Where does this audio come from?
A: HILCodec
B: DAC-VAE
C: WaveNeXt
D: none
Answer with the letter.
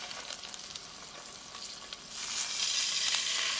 D